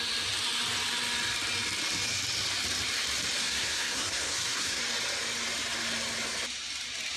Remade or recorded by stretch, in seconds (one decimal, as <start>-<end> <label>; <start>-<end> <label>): 0.0-3.4 recorded; 3.4-4.8 remade; 4.8-7.2 recorded